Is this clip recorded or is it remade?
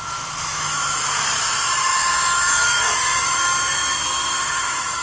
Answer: remade